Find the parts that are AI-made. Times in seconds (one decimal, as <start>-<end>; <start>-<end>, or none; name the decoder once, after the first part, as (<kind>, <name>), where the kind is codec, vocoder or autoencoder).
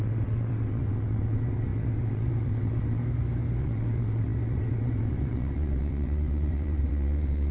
0.0-3.0 (vocoder, WaveNeXt); 3.6-7.5